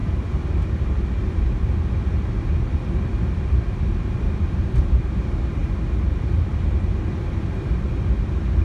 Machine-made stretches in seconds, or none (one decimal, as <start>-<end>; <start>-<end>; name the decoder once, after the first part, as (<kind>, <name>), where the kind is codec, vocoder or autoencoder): none

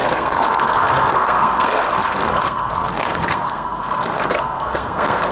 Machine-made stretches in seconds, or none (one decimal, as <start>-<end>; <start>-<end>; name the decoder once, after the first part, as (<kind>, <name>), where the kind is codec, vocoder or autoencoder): 0.0-5.3 (codec, SNAC)

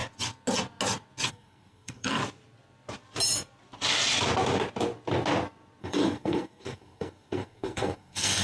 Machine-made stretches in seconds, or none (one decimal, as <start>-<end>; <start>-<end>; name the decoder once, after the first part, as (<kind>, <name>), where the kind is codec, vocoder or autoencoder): 1.3-2.2 (codec, SNAC); 5.8-8.4

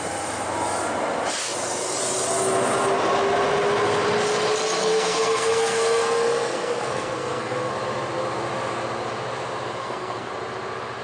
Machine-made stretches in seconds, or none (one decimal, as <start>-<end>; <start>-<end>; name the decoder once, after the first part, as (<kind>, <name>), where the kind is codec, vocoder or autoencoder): 4.8-7.7 (codec, SNAC); 9.8-10.3

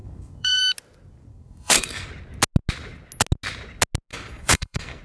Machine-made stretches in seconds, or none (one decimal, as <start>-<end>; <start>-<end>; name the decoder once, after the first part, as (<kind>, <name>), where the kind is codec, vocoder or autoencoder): 0.0-0.6 (codec, SNAC); 1.3-2.1; 4.1-5.0

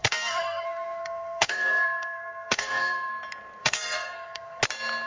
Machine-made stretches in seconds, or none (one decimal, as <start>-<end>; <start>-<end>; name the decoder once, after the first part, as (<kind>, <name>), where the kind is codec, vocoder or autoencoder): 0.0-3.1 (codec, SNAC); 3.6-4.6

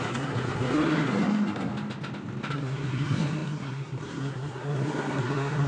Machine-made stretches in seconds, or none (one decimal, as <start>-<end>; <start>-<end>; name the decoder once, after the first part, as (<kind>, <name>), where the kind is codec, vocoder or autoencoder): 0.0-1.7 (codec, SNAC); 2.5-5.7

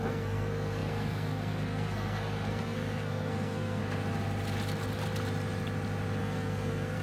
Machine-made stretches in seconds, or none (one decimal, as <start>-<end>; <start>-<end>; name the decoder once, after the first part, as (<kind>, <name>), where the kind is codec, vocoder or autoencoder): 0.0-3.8 (codec, SNAC); 6.2-7.0